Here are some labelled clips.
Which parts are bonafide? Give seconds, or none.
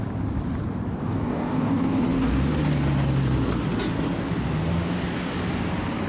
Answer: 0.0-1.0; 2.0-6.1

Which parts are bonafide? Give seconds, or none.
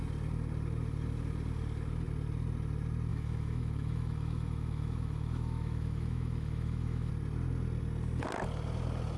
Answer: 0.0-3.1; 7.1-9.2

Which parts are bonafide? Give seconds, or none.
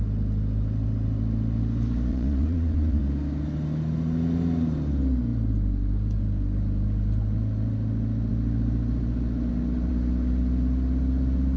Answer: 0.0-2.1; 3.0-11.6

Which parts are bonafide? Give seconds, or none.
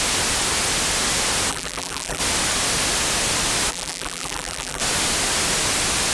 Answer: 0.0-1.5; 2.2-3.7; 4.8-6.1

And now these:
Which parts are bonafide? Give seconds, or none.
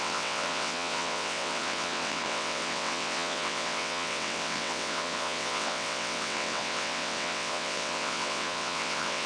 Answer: none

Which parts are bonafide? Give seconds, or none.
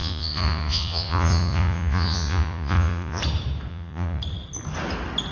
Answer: 3.2-3.7; 4.2-5.3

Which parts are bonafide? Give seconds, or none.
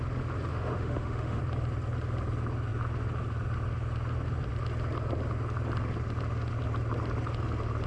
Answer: 0.0-0.5; 1.4-7.9